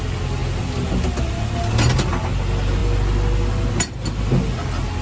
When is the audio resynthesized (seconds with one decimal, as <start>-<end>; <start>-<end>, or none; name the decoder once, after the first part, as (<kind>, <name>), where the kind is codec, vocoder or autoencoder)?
none